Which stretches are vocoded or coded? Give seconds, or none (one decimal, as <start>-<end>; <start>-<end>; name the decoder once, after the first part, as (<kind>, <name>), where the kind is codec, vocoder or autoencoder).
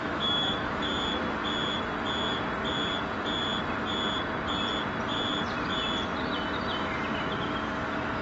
0.0-0.9 (autoencoder, DAC-VAE)